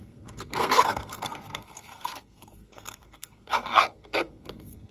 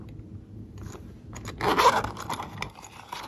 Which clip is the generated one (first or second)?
first